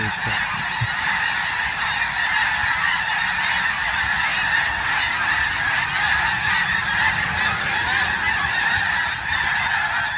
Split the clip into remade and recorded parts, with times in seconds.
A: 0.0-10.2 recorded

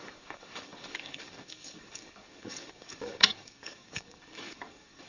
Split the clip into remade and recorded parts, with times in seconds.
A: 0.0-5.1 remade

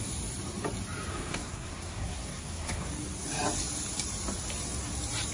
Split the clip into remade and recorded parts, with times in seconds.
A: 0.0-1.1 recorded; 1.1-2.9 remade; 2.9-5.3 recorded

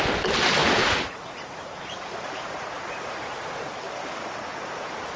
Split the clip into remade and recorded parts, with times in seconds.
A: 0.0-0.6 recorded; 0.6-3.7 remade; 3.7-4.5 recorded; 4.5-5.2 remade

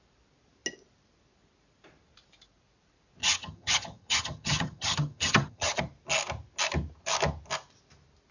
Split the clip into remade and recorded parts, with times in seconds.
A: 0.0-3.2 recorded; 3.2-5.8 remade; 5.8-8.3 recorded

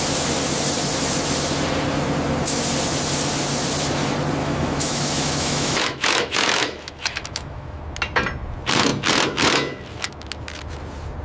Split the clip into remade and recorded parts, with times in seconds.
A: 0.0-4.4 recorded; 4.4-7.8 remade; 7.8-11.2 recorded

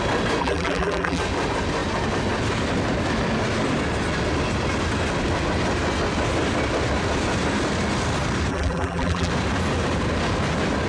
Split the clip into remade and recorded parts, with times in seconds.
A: 0.0-0.4 recorded; 0.4-1.2 remade; 1.2-8.5 recorded; 8.5-9.3 remade; 9.3-10.9 recorded

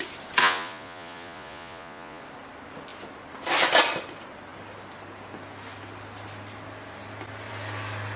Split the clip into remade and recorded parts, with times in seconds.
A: 0.0-0.4 recorded; 0.4-2.2 remade; 2.2-8.2 recorded